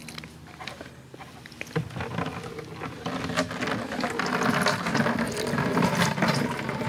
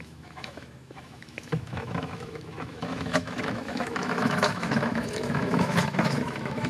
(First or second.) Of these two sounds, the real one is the first